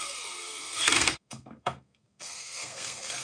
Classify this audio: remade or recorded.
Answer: remade